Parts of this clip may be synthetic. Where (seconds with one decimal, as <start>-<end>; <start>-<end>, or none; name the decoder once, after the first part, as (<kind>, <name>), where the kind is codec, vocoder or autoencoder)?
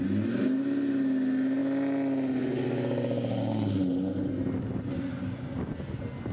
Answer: none